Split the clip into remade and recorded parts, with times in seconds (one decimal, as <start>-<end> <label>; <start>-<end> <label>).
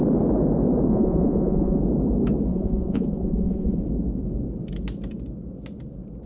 0.0-0.9 recorded; 0.9-1.8 remade; 1.8-2.5 recorded; 2.5-3.8 remade; 3.8-6.3 recorded